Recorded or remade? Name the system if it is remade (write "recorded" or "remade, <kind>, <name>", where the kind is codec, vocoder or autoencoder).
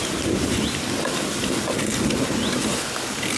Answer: recorded